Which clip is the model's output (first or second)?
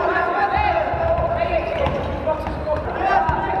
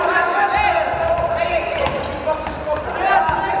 first